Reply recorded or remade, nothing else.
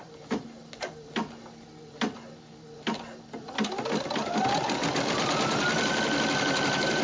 recorded